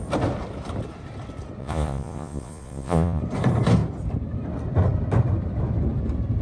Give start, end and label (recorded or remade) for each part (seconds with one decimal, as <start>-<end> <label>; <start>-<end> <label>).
0.0-1.6 recorded; 1.6-3.2 remade; 3.2-6.4 recorded